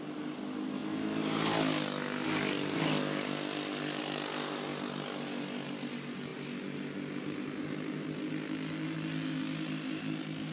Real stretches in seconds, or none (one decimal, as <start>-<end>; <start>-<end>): 0.0-10.5